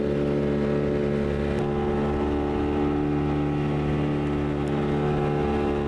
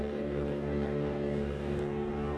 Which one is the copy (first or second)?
second